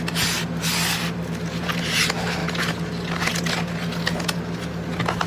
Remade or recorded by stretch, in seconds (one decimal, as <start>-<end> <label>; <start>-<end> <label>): 0.0-5.3 recorded

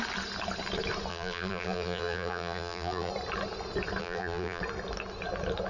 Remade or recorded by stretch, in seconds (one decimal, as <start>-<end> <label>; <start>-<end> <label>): 0.0-1.1 recorded; 1.1-3.1 remade; 3.1-4.0 recorded; 4.0-4.6 remade; 4.6-5.7 recorded

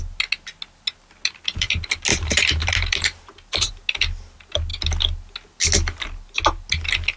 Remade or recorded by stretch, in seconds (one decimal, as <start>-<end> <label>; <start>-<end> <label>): 0.0-2.1 recorded; 2.1-3.7 remade; 3.7-7.2 recorded